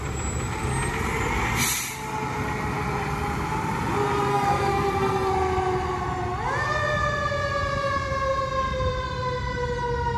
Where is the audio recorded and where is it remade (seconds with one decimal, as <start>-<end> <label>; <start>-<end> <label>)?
0.0-4.3 recorded; 4.3-5.3 remade; 5.3-10.2 recorded